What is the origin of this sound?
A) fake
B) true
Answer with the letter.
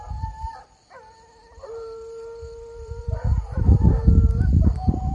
A